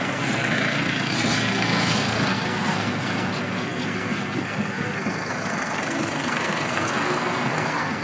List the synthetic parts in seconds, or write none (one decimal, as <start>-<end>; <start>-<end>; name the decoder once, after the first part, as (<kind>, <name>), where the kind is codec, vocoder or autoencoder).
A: 0.0-8.0 (codec, SNAC)